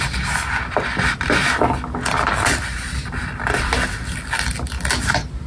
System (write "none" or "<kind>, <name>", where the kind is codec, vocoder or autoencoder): none